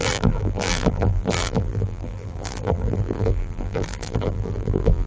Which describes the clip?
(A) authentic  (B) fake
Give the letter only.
B